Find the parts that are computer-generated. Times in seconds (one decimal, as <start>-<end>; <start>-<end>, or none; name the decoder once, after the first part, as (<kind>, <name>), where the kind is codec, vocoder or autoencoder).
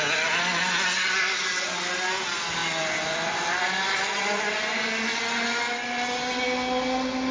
none